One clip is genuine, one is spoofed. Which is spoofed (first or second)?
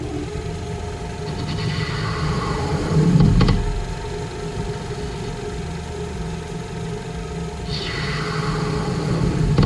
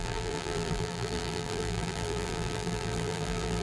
second